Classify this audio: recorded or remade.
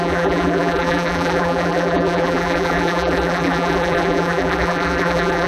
remade